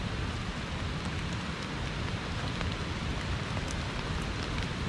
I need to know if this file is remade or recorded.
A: recorded